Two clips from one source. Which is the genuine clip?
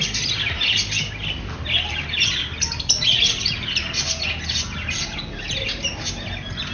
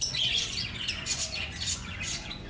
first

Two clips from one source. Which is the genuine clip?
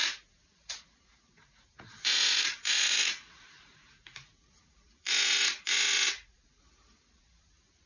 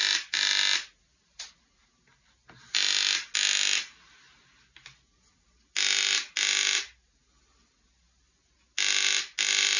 second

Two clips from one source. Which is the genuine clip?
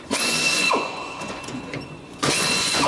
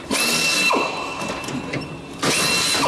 second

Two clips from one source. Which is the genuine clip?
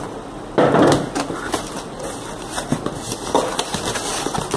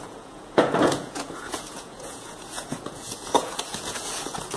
first